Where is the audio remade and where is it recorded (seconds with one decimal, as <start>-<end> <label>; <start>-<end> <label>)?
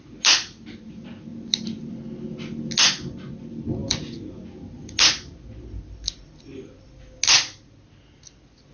0.0-1.3 recorded; 1.3-1.9 remade; 1.9-8.7 recorded